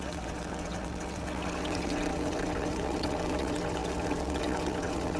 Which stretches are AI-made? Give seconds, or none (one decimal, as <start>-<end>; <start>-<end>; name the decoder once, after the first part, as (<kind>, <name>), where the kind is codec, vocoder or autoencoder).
0.0-5.2 (vocoder, WaveNeXt)